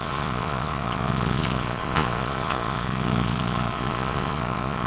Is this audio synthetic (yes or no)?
yes